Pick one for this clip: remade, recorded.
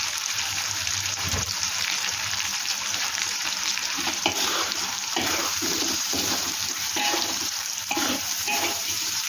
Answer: remade